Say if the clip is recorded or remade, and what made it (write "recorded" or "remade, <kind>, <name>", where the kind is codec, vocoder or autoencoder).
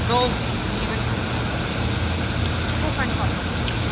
recorded